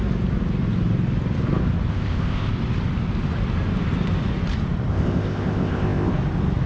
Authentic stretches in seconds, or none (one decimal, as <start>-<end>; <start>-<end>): 0.0-1.9; 2.5-4.9; 6.1-6.7